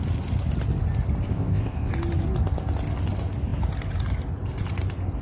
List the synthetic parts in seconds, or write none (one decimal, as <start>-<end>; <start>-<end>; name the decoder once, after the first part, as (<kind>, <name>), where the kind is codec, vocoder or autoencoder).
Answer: 1.3-1.9 (codec, ZipCodec)

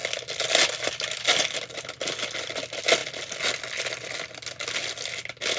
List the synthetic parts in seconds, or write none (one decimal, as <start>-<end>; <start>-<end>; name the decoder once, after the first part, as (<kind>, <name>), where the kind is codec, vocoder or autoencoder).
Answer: none

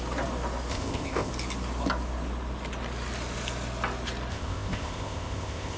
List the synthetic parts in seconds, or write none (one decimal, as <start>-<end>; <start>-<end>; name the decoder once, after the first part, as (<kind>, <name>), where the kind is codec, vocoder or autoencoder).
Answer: 0.7-1.3 (codec, ZipCodec); 4.3-5.8

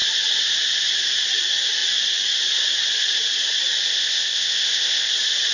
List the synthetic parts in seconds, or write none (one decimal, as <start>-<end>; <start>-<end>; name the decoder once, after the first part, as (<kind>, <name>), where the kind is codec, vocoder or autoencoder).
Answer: 3.8-5.1 (codec, ZipCodec)

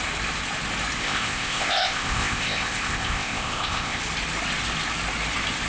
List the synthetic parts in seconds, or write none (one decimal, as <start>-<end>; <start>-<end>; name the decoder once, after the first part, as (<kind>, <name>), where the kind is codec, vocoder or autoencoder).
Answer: 1.0-4.0 (codec, ZipCodec)

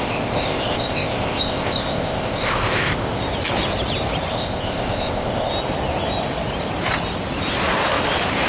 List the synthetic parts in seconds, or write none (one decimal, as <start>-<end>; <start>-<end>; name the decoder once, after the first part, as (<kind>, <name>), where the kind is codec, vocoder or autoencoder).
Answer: 0.0-3.2 (codec, ZipCodec); 4.3-5.5

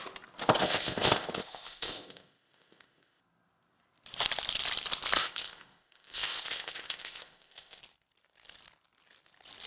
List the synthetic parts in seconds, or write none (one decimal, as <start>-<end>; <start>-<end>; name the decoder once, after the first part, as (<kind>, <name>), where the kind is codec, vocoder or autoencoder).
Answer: 0.6-3.2 (codec, ZipCodec); 5.2-7.8

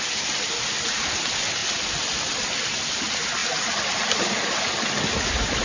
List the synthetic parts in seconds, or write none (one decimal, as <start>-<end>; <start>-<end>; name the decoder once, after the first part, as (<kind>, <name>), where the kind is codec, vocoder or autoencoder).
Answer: none